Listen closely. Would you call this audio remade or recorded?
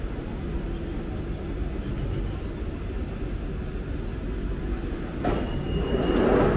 recorded